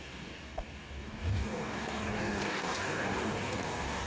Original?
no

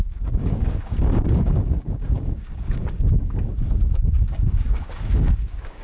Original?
no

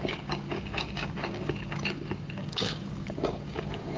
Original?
no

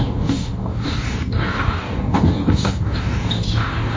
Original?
no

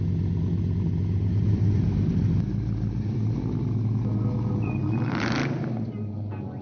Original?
yes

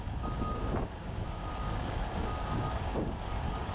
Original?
no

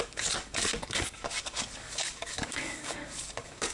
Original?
no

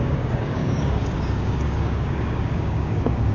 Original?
no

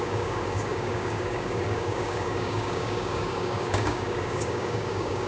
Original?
no